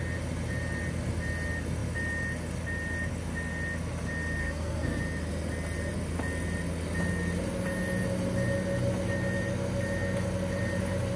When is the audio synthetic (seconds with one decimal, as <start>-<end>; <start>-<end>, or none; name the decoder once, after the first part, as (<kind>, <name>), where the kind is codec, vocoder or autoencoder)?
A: 4.4-5.0 (codec, SNAC)